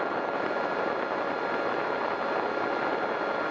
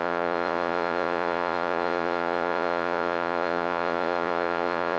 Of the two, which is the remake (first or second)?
second